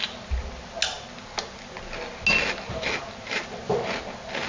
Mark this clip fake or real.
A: real